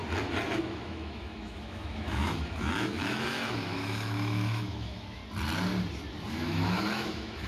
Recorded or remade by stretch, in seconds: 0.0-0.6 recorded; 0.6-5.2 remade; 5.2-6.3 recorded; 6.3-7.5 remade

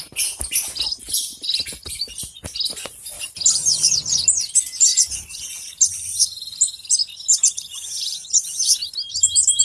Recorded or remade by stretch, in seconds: 0.0-4.9 recorded; 4.9-5.5 remade; 5.5-9.6 recorded